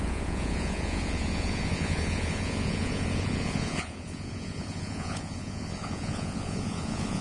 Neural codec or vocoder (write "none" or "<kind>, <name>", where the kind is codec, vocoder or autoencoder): vocoder, Vocos